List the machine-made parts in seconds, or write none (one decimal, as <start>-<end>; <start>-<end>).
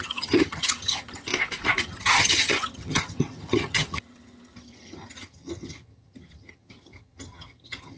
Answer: 0.0-1.3; 1.8-8.0